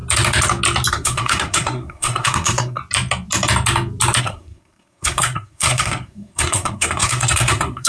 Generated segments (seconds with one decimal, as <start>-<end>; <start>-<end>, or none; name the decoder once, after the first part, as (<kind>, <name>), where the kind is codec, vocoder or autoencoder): 0.9-2.8 (codec, SNAC); 4.2-7.9